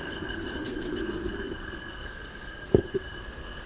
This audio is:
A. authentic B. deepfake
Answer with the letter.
B